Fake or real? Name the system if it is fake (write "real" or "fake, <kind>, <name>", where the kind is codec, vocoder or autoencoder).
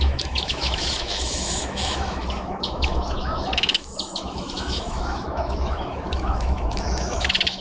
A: fake, autoencoder, DAC-VAE